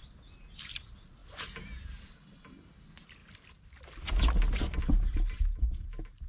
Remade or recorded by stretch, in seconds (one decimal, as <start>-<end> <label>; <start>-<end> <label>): 0.0-6.3 recorded